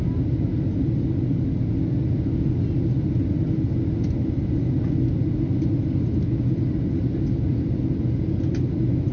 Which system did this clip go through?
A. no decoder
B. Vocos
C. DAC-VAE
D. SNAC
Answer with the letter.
A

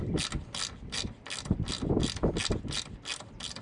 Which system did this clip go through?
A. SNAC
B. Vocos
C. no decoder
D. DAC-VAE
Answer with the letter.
C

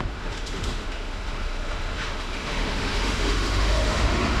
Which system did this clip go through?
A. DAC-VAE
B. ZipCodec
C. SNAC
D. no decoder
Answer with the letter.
A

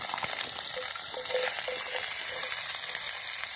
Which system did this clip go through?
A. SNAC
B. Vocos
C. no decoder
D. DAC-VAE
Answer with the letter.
C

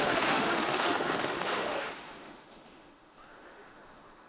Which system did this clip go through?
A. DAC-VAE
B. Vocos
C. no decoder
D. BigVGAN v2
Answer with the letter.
A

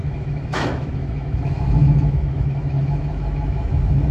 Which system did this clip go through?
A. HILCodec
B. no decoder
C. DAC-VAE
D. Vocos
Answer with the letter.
C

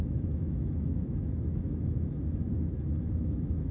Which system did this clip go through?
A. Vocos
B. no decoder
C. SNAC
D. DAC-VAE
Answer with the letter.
D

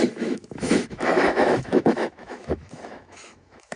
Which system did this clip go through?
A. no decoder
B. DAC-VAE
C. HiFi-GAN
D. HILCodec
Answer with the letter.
B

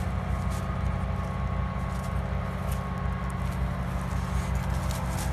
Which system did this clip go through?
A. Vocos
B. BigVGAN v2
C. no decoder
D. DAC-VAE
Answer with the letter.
C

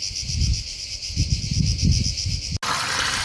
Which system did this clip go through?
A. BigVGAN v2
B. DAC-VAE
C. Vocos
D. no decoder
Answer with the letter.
D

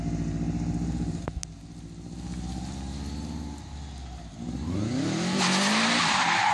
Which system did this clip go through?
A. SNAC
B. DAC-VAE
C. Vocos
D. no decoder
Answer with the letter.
D